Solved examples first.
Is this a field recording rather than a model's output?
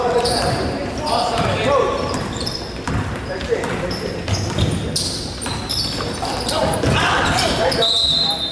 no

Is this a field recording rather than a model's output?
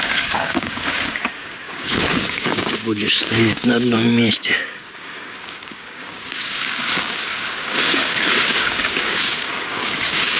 no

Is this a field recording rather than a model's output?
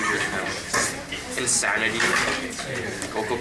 yes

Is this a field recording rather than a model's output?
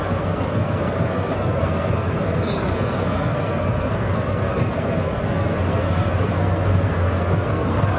no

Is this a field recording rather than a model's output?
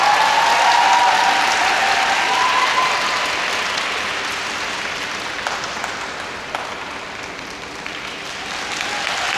yes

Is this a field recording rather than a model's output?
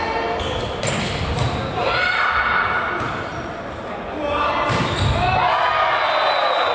yes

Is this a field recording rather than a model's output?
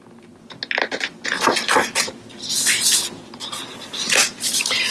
yes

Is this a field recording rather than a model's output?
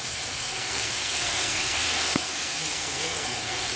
no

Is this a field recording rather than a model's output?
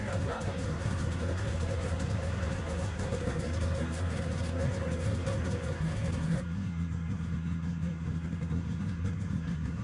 no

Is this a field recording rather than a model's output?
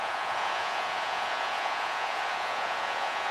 no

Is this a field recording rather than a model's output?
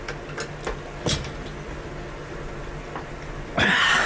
yes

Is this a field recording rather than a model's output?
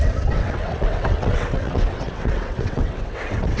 no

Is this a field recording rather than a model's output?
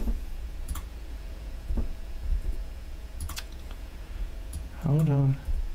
no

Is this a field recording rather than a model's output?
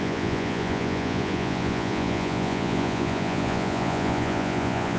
no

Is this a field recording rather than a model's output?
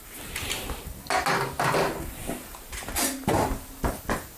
yes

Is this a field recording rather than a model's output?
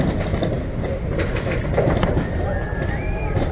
no